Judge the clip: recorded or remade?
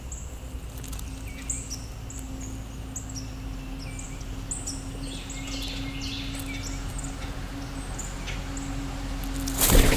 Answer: recorded